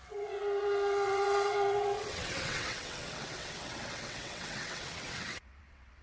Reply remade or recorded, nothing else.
remade